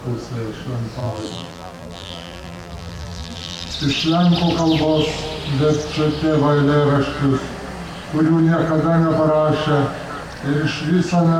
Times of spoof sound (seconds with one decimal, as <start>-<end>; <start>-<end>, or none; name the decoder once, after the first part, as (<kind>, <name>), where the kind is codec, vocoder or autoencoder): 1.0-3.7 (vocoder, BigVGAN v2)